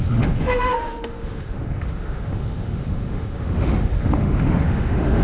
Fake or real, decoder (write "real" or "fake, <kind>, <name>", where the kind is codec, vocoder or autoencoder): fake, autoencoder, DAC-VAE